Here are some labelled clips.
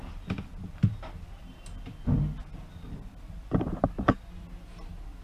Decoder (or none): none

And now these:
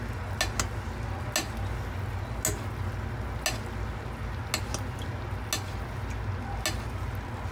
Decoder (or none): none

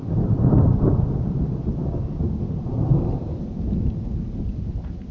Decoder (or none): none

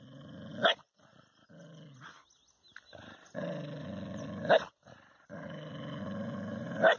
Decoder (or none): none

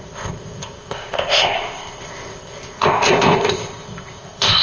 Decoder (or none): codec, ZipCodec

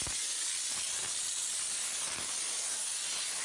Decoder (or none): none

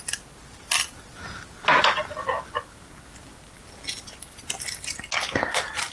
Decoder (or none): none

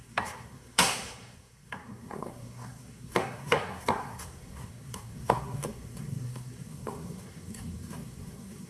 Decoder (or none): codec, SNAC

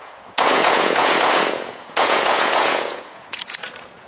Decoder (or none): vocoder, Vocos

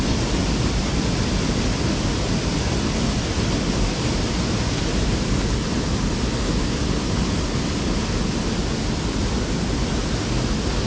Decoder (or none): none